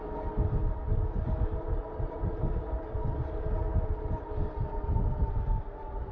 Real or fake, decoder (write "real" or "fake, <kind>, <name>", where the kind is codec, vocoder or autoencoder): real